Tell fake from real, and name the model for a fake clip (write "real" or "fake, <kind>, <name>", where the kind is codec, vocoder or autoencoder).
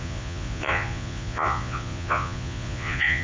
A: fake, vocoder, Vocos